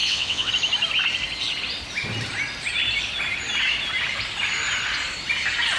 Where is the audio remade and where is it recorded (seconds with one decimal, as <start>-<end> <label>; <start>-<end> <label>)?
0.0-0.5 remade; 0.5-5.8 recorded